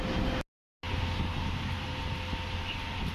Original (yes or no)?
yes